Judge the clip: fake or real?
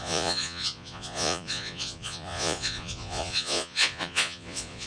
fake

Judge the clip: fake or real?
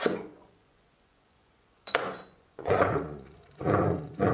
fake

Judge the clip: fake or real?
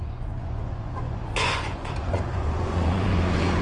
fake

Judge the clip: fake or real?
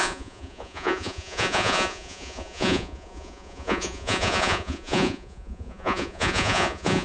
fake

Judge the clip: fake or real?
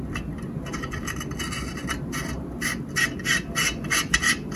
real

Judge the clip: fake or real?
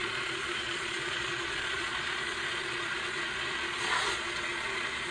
fake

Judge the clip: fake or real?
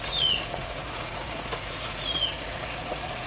fake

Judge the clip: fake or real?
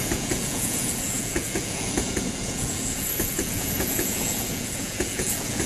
fake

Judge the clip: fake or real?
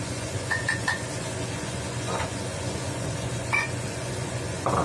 fake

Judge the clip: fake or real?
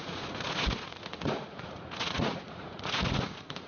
fake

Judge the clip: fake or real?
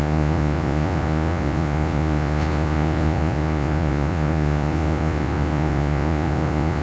fake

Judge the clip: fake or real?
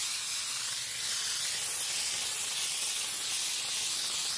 real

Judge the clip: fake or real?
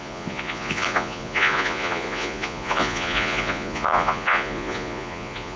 fake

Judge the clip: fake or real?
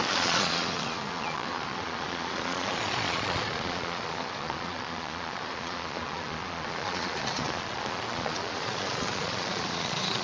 fake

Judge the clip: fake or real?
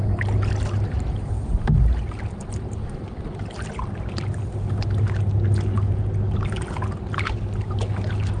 real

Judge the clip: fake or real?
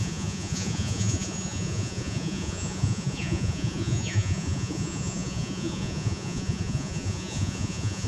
fake